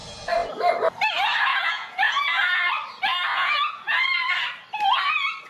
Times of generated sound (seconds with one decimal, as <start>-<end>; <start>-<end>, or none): 1.5-2.7; 3.3-4.0